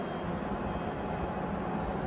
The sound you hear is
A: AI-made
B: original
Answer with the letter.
B